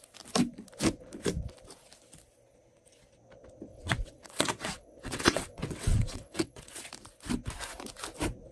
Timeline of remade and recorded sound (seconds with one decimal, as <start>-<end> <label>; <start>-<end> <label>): 0.0-3.7 recorded; 3.7-6.8 remade; 6.8-8.5 recorded